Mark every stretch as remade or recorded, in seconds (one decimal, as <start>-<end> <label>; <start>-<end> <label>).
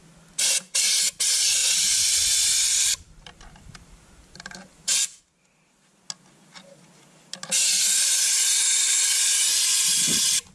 0.0-1.6 recorded; 1.6-5.2 remade; 5.2-10.5 recorded